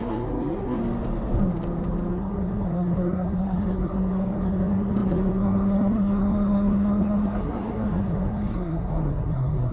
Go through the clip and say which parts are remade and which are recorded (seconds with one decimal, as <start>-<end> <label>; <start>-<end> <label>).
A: 0.0-0.8 remade; 0.8-2.1 recorded; 2.1-9.7 remade